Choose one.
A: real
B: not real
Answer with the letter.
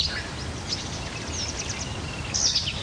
A